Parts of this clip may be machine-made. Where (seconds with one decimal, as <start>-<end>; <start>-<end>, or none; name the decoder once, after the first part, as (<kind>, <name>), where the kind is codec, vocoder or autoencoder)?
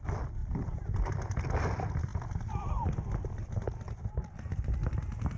none